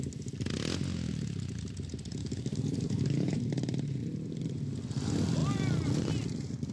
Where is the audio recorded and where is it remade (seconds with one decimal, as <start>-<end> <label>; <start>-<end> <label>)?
0.0-2.2 recorded; 2.2-3.4 remade; 3.4-6.7 recorded